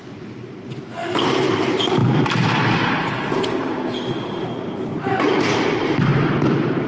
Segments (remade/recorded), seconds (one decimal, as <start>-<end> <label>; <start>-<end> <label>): 0.0-2.0 remade; 2.0-4.3 recorded; 4.3-6.9 remade